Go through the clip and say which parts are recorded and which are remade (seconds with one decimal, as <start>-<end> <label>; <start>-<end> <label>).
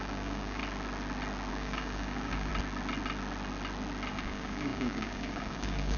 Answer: 0.0-0.6 remade; 0.6-1.5 recorded; 1.5-2.5 remade; 2.5-4.1 recorded; 4.1-6.0 remade